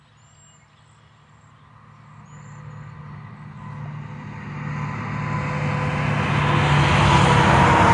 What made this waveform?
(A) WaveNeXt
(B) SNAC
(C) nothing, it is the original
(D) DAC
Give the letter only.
C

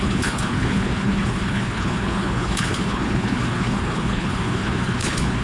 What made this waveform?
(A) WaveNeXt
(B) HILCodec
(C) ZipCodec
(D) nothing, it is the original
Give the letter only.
B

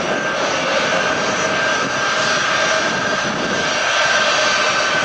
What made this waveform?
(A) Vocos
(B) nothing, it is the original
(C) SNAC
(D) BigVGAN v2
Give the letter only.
B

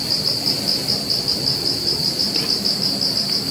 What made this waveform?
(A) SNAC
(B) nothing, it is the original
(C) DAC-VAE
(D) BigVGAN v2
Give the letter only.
B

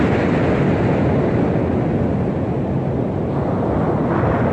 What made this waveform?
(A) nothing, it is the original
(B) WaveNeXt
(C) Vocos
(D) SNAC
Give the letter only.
A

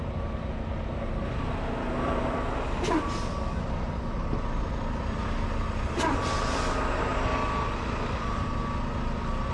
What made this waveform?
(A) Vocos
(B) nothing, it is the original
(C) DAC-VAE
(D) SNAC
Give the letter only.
B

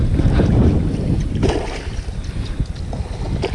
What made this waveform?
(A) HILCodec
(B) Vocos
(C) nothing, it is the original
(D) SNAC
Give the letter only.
C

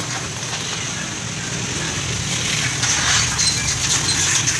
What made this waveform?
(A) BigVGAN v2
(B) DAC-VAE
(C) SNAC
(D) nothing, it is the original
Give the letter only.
D